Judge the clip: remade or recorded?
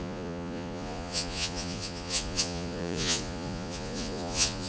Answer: remade